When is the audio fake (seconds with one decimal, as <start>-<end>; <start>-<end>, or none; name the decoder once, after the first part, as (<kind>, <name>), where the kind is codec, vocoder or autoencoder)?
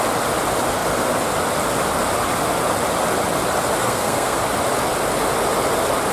3.8-4.4 (codec, SNAC)